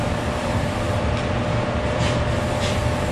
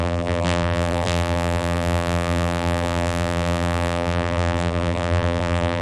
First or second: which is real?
first